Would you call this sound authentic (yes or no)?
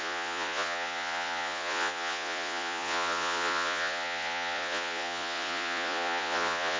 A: no